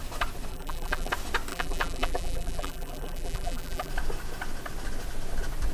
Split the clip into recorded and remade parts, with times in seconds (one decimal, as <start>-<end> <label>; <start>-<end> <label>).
0.0-0.5 recorded; 0.5-1.1 remade; 1.1-1.5 recorded; 1.5-3.9 remade; 3.9-5.7 recorded